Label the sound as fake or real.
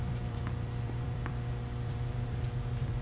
fake